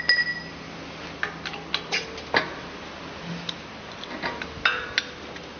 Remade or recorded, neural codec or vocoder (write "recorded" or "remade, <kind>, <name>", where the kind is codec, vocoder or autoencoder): recorded